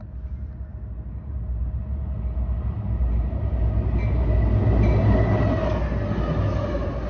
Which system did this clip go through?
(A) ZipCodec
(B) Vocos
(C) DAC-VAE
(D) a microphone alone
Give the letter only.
D